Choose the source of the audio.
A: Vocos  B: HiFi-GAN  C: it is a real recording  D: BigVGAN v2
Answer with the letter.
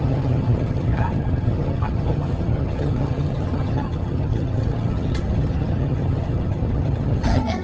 B